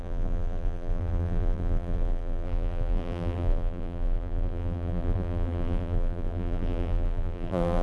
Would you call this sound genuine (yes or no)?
no